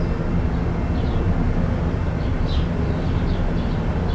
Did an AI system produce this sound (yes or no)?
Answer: no